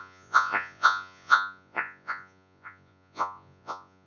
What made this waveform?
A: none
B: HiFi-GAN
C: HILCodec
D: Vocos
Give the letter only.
D